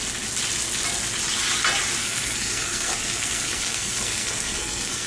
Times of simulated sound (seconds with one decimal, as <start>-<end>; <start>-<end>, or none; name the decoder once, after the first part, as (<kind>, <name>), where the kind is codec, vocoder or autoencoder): 2.0-5.1 (codec, SNAC)